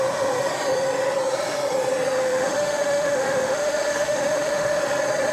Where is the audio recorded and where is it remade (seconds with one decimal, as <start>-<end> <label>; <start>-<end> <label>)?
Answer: 0.0-2.2 recorded; 2.2-4.8 remade; 4.8-5.3 recorded